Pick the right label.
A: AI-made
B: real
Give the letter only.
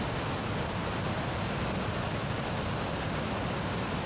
B